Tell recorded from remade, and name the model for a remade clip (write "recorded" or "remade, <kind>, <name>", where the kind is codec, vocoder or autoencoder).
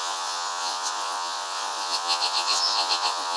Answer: remade, vocoder, Vocos